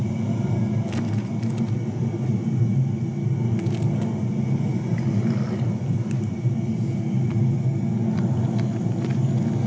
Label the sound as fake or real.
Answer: real